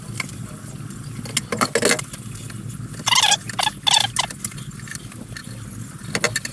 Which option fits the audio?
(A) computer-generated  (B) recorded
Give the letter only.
B